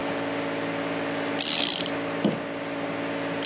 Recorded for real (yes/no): yes